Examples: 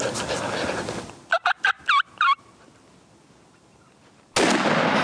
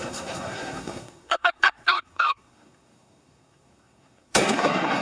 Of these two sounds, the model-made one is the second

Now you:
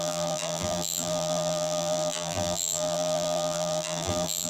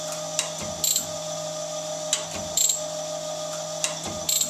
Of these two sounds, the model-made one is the first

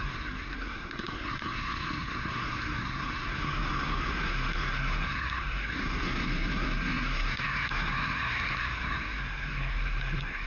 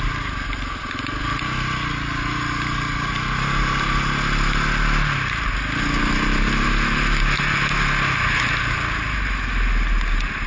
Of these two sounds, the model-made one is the first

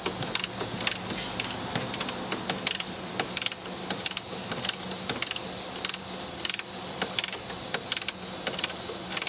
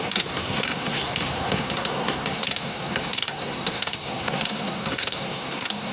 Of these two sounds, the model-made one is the second